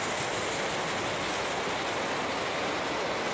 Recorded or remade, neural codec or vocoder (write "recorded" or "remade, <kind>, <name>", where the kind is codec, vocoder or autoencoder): recorded